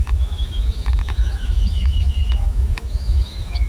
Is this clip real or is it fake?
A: fake